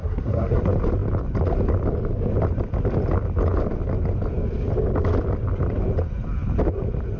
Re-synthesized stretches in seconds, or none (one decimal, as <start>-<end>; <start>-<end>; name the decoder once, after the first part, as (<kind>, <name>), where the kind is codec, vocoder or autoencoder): 0.0-0.6 (codec, SNAC)